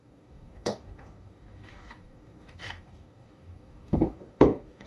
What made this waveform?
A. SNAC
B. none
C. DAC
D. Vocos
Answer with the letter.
C